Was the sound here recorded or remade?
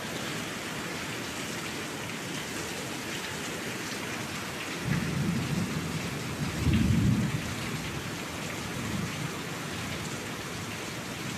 recorded